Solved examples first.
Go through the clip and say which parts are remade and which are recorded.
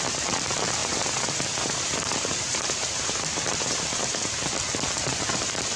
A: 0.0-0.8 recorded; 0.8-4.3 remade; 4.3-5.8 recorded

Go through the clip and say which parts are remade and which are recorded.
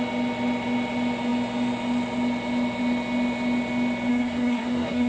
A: 0.0-4.1 recorded; 4.1-5.1 remade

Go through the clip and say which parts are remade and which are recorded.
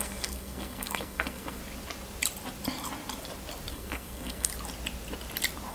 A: 0.0-1.6 remade; 1.6-3.7 recorded; 3.7-4.5 remade; 4.5-5.7 recorded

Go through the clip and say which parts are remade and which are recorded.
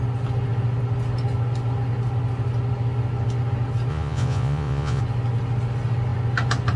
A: 0.0-3.9 recorded; 3.9-5.0 remade; 5.0-6.8 recorded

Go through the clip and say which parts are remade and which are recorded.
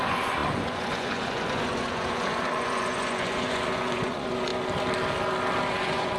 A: 0.0-4.5 remade; 4.5-5.7 recorded; 5.7-6.2 remade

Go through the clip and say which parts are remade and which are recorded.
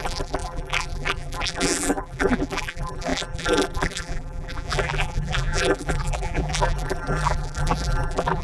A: 0.0-8.4 remade